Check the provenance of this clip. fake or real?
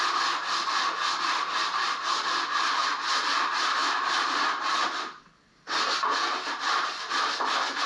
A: real